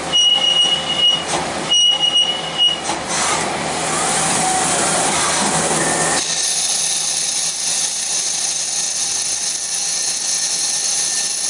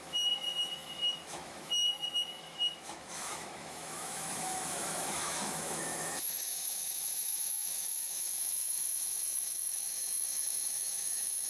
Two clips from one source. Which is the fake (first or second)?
second